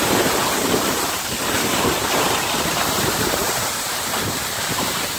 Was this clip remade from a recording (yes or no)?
yes